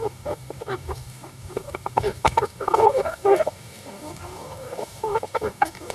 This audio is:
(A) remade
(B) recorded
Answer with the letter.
A